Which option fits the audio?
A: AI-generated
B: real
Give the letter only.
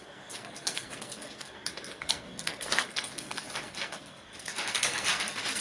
A